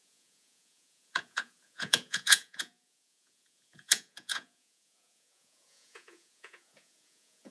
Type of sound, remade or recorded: remade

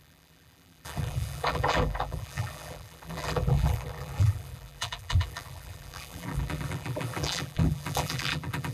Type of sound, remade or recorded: remade